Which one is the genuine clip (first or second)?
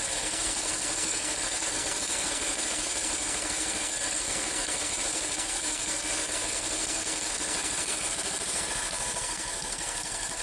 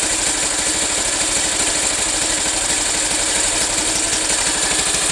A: second